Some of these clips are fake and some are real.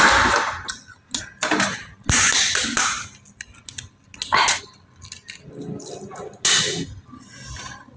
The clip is real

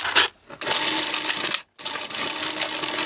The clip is real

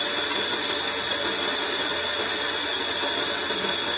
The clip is real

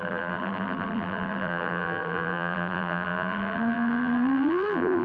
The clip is fake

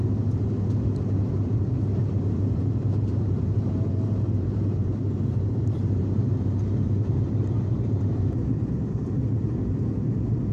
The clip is fake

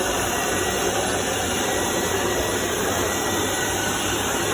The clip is fake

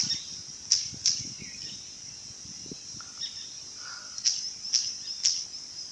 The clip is real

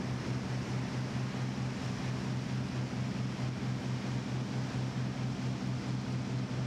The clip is real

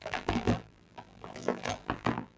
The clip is fake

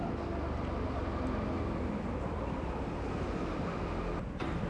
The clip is real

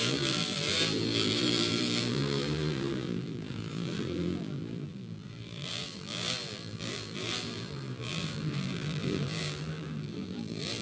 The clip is fake